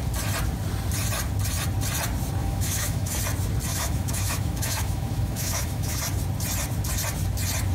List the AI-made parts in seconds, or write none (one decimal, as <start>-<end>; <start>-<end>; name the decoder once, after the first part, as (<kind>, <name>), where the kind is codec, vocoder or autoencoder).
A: 2.4-3.2 (autoencoder, DAC-VAE); 3.7-6.0